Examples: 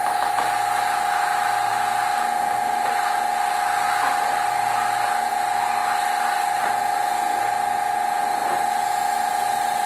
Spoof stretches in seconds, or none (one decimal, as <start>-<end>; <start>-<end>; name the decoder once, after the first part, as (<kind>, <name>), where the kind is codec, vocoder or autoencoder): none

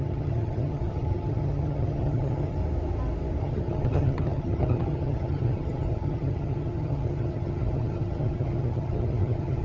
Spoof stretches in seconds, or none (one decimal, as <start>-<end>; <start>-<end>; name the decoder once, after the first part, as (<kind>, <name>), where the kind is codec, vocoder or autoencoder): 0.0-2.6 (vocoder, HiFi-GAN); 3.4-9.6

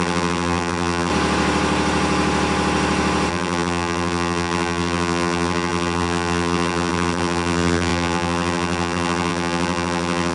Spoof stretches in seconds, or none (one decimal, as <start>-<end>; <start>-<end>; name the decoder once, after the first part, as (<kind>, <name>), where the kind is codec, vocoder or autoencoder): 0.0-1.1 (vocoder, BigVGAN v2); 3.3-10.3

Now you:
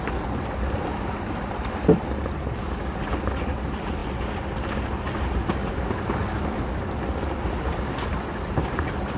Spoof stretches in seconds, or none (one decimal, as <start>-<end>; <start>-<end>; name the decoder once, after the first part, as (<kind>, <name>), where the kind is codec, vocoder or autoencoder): none

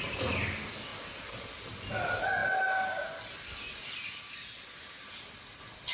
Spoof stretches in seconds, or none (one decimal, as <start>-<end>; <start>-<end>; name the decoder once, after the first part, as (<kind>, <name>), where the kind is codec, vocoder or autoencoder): none

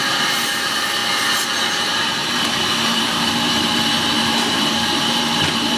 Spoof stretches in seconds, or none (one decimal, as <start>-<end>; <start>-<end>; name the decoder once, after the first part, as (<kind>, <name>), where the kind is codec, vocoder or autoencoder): 0.0-1.0 (vocoder, BigVGAN v2); 1.7-5.8